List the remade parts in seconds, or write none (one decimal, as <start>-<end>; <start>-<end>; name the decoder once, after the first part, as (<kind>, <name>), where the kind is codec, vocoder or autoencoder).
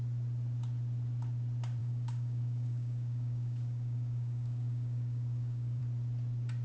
1.8-5.8 (codec, DAC)